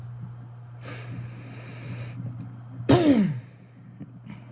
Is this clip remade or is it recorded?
recorded